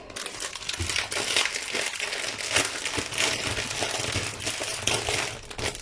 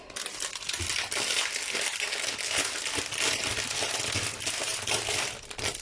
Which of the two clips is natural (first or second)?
first